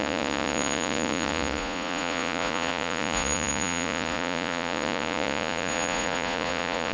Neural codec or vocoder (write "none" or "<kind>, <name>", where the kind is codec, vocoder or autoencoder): vocoder, Vocos